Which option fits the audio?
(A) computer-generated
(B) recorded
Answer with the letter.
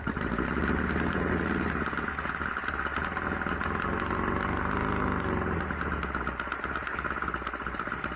B